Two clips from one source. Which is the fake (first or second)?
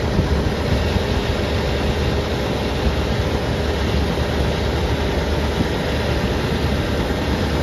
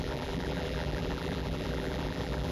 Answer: second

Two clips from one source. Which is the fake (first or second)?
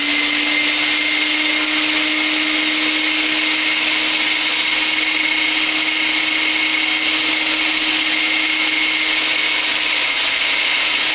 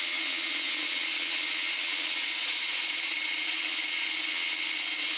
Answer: second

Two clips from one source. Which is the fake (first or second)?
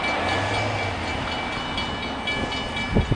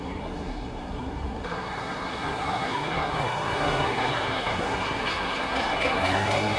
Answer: second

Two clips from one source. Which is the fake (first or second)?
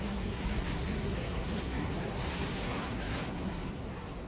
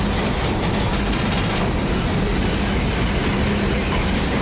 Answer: first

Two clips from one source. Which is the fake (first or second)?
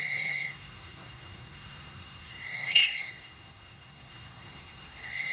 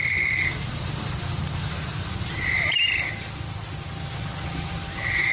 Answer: first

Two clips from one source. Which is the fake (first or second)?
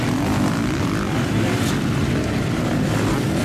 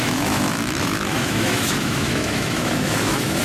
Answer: second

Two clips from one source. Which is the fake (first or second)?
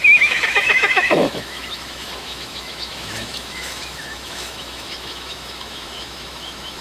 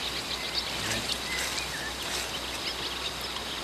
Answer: first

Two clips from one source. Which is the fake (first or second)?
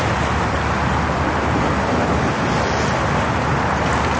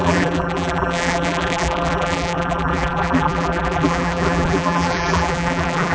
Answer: second